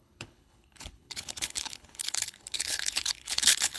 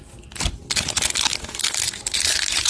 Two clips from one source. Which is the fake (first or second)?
first